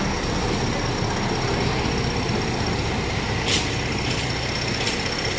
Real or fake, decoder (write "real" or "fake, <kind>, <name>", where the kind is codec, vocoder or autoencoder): real